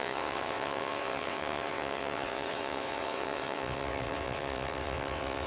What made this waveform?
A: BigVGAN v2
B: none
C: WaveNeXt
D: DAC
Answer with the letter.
C